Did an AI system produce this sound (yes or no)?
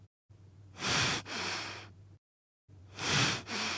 yes